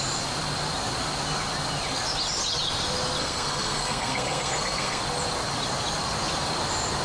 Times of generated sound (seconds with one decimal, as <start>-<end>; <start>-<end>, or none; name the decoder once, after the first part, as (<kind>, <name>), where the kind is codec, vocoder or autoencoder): 3.2-5.0 (codec, SNAC)